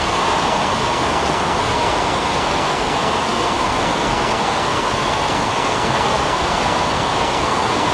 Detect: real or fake fake